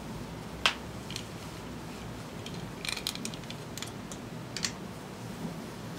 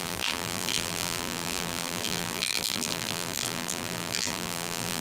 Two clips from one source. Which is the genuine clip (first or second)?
first